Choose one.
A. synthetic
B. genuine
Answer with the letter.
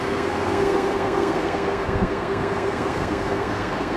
A